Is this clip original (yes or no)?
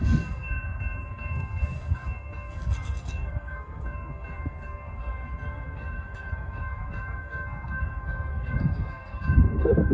no